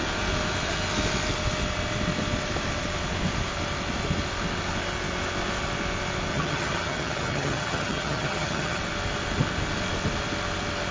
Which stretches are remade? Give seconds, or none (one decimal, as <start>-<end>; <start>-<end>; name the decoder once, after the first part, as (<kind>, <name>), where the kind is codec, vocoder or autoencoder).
6.3-8.8 (vocoder, HiFi-GAN)